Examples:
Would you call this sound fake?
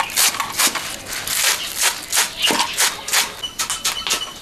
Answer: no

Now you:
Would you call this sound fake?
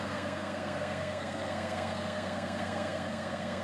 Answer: yes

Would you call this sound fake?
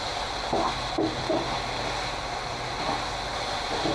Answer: no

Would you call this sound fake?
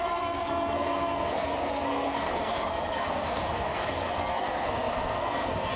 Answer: yes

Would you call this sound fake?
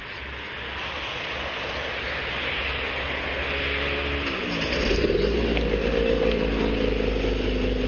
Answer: no